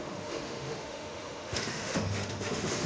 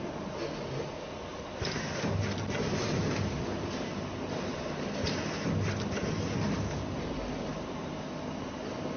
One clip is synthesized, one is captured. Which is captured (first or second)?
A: second